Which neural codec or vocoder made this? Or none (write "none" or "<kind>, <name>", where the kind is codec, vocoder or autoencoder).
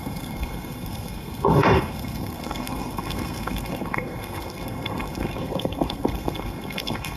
codec, SNAC